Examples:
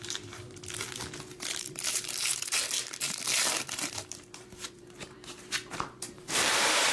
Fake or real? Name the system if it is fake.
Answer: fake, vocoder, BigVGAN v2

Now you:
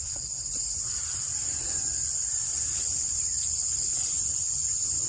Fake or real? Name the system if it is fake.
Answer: real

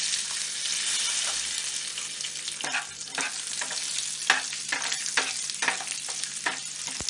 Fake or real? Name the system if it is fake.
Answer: real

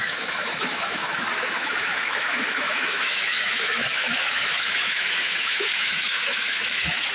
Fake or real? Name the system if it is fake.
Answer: fake, autoencoder, DAC-VAE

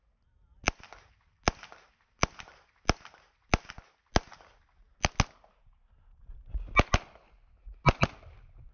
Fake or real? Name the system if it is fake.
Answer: real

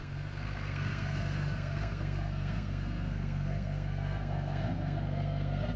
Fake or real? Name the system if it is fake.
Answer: fake, codec, SNAC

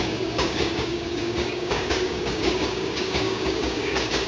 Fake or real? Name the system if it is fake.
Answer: fake, codec, DAC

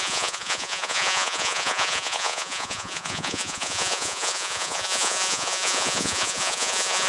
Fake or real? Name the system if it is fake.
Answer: fake, vocoder, Vocos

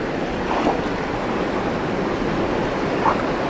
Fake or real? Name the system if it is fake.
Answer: real